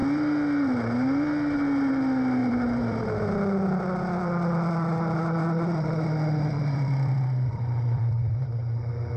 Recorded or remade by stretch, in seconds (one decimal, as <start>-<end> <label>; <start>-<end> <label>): 0.0-2.4 recorded; 2.4-3.0 remade; 3.0-4.2 recorded; 4.2-8.0 remade; 8.0-9.2 recorded